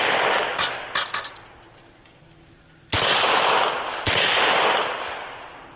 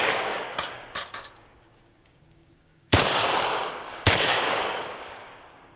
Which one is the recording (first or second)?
first